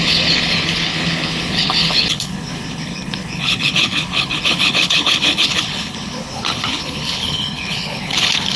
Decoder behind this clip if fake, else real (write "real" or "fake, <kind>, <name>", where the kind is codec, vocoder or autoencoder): fake, codec, HILCodec